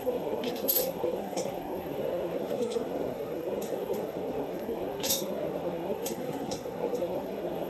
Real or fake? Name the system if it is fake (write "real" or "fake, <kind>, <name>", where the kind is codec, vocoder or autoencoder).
fake, codec, SNAC